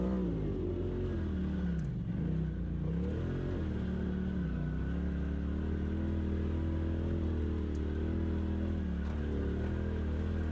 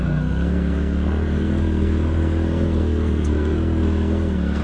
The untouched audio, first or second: first